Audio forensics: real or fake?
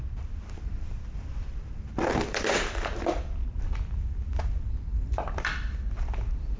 fake